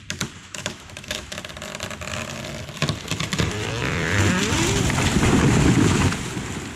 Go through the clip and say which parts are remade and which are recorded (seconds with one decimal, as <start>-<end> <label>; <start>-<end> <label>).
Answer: 0.0-0.4 recorded; 0.4-1.4 remade; 1.4-6.8 recorded